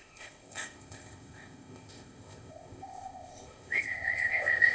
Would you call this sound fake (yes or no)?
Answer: yes